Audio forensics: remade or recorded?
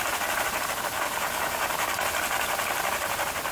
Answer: recorded